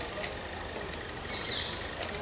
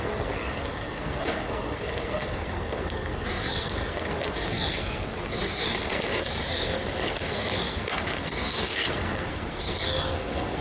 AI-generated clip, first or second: second